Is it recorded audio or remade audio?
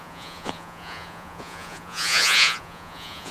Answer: remade